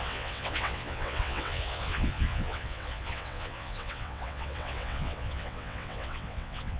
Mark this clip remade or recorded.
remade